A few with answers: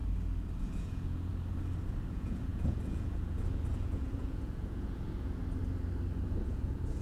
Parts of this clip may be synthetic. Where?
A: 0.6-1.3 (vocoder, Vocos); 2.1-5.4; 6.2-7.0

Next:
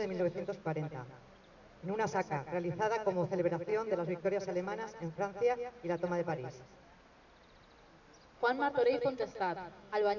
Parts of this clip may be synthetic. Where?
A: 0.0-0.6 (autoencoder, DAC-VAE); 2.1-3.7; 8.7-10.2

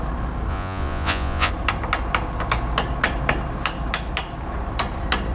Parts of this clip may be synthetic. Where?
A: 0.5-1.5 (vocoder, Vocos)